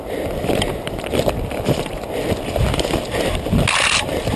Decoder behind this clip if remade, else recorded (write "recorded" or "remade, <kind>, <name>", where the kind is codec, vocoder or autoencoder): recorded